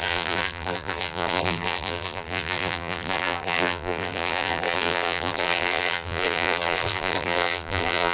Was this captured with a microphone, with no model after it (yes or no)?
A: no